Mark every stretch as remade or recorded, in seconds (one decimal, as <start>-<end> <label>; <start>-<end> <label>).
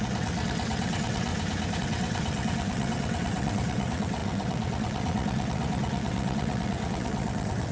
0.0-1.3 remade; 1.3-1.8 recorded; 1.8-7.7 remade